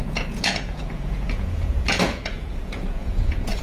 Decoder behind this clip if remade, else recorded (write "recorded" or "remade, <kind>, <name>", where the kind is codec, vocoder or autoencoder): remade, vocoder, Vocos